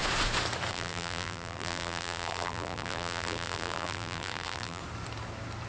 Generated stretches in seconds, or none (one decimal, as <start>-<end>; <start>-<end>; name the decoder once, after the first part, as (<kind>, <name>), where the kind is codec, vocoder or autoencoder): 0.7-4.8 (vocoder, BigVGAN v2)